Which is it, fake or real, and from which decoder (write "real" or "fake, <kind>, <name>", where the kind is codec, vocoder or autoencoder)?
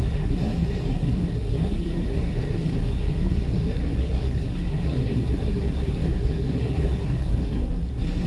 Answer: fake, codec, SNAC